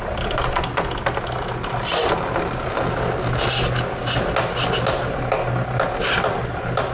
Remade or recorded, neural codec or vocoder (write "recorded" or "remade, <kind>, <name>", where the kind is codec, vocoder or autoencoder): recorded